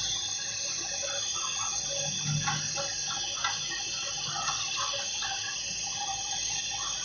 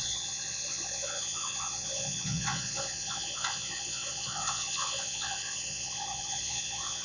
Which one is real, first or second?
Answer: first